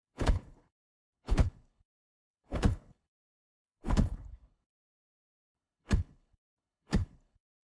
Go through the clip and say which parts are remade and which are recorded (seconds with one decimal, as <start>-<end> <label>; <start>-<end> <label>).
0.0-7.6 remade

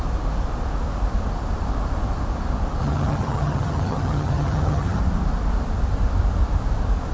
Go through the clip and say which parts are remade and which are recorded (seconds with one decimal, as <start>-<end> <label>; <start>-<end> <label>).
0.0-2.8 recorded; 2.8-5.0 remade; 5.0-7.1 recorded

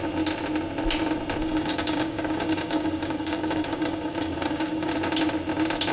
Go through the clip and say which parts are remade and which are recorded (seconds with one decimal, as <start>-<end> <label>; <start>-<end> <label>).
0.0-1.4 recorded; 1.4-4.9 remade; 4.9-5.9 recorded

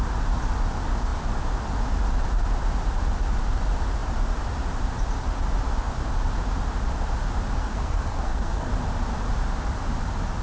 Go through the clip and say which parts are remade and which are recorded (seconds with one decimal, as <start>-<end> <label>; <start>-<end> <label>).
0.0-7.6 recorded; 7.6-8.7 remade; 8.7-10.4 recorded

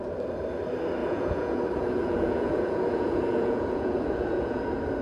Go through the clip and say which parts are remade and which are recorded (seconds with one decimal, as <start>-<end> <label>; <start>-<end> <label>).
0.0-1.0 recorded; 1.0-1.6 remade; 1.6-2.0 recorded; 2.0-4.6 remade; 4.6-5.0 recorded

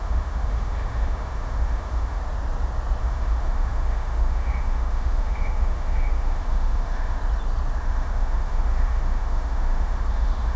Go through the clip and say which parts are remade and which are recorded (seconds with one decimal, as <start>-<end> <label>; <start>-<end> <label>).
0.0-2.2 remade; 2.2-3.0 recorded; 3.0-7.2 remade; 7.2-7.8 recorded; 7.8-10.6 remade

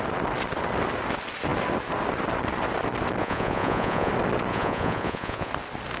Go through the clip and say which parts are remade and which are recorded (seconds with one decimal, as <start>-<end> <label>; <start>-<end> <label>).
0.0-3.2 recorded; 3.2-4.1 remade; 4.1-4.5 recorded; 4.5-5.5 remade; 5.5-6.0 recorded